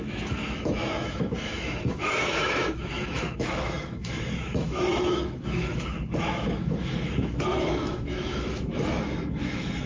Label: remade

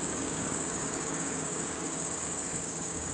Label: remade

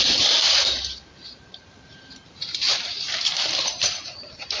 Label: remade